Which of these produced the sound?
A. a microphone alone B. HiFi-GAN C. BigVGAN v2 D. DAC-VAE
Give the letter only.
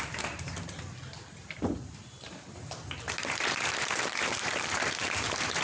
C